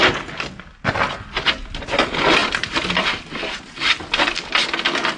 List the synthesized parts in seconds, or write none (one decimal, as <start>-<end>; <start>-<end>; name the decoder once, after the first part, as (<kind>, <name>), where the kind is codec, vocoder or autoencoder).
none